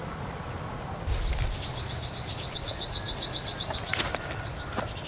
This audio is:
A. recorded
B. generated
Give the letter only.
A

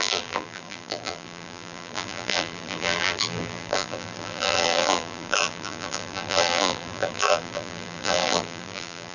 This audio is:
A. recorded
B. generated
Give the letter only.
B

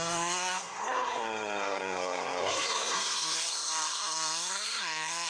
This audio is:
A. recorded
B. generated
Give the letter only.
B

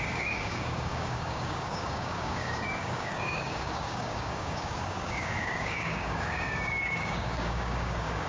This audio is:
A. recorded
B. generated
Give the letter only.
B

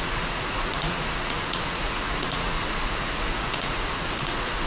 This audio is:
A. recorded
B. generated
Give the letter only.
B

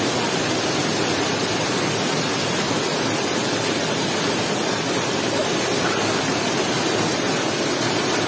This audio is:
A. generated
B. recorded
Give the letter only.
B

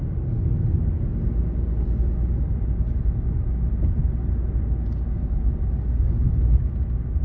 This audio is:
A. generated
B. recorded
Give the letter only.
B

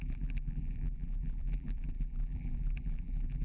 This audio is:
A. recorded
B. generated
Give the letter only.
B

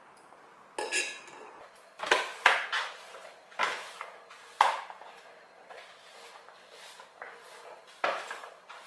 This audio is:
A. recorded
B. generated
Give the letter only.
A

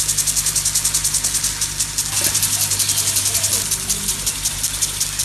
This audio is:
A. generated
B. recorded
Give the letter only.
B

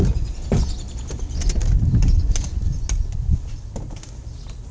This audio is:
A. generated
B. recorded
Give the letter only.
B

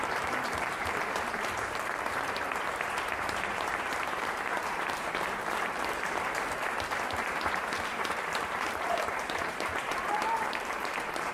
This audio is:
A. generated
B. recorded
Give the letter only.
A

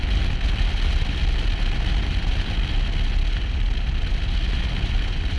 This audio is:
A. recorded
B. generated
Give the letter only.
A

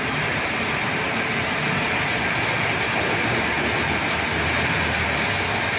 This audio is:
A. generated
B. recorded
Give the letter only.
B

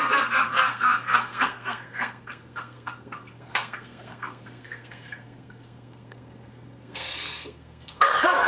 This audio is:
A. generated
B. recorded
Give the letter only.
A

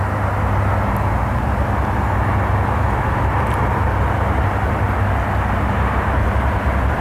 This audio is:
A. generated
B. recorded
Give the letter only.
B